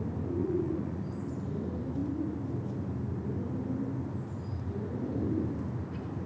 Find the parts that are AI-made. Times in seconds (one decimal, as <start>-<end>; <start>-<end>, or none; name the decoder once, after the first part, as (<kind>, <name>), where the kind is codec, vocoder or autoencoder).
0.4-1.0 (vocoder, Vocos)